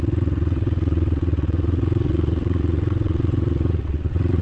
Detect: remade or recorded remade